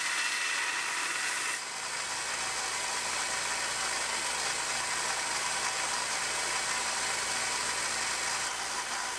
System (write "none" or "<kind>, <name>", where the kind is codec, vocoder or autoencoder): none